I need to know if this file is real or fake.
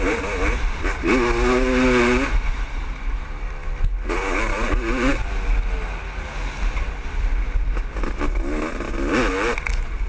real